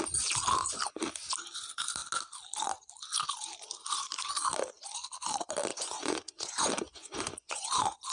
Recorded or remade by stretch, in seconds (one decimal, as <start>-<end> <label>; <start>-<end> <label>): 0.0-5.7 recorded; 5.7-8.1 remade